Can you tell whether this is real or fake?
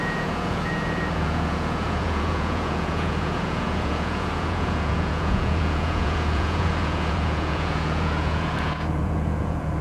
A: fake